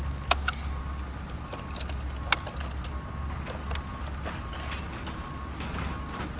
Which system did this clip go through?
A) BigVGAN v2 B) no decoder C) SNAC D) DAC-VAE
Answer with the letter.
B